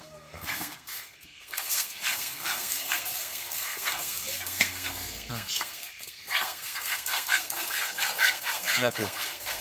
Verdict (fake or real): fake